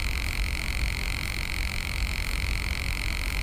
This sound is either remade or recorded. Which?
remade